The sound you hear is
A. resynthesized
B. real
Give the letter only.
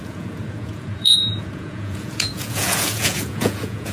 A